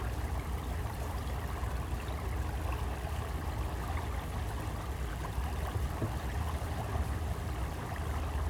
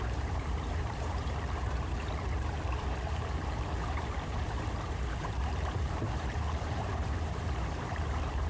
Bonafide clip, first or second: first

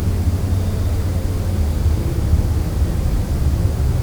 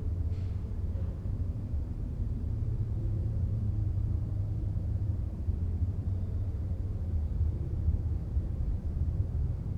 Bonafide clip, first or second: first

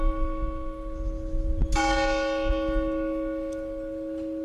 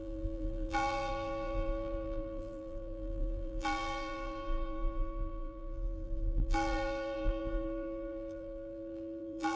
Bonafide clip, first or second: first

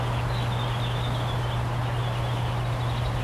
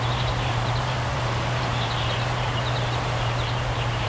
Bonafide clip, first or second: first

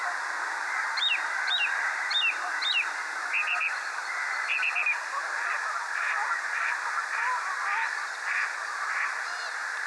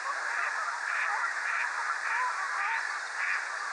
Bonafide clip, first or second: second